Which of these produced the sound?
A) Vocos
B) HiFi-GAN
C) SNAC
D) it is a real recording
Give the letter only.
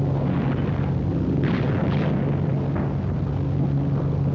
D